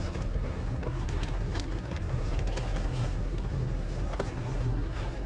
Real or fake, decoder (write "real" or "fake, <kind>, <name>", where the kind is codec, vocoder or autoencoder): fake, codec, SNAC